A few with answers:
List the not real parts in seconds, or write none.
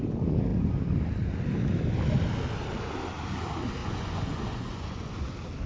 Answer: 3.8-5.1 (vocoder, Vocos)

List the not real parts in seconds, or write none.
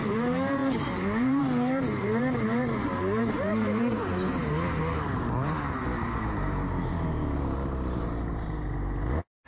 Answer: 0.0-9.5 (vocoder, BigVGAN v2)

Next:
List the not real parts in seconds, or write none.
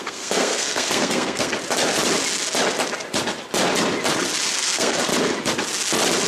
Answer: 0.0-1.5 (codec, SNAC); 4.5-5.1